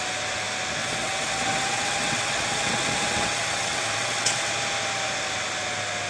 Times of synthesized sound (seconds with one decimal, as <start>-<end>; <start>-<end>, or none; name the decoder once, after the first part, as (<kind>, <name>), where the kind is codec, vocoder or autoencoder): 0.8-4.5 (vocoder, WaveNeXt)